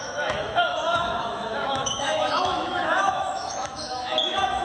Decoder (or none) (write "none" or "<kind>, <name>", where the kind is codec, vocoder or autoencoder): autoencoder, DAC-VAE